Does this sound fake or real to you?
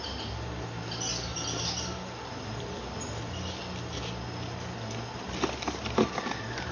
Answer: real